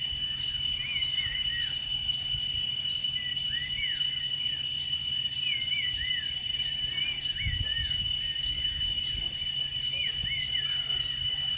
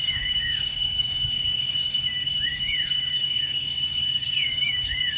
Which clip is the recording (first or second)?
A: first